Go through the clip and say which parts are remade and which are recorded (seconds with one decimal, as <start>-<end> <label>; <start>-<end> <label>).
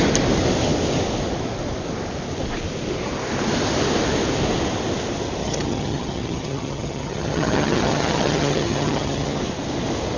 0.0-5.4 recorded; 5.4-9.4 remade; 9.4-10.2 recorded